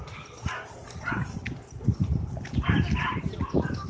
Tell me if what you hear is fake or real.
real